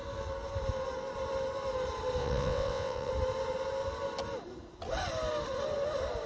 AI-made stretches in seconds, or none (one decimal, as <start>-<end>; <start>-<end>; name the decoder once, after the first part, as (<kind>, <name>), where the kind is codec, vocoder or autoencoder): 2.2-3.1 (vocoder, WaveNeXt)